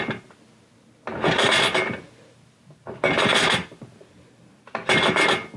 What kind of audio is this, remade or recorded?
recorded